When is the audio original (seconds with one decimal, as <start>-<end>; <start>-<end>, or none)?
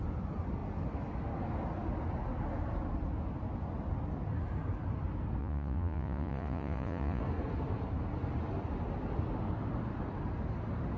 0.0-5.4; 7.2-11.0